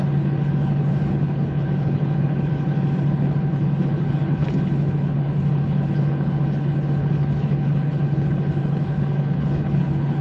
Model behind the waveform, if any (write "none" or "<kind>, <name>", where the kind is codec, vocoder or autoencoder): codec, HILCodec